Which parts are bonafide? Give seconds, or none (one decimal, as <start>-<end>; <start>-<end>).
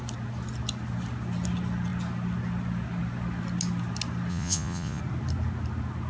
0.0-4.3; 5.0-6.1